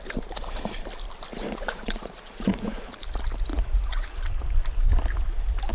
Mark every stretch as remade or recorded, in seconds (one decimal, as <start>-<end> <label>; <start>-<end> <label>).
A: 0.0-1.3 recorded; 1.3-2.9 remade; 2.9-3.5 recorded; 3.5-4.2 remade; 4.2-5.7 recorded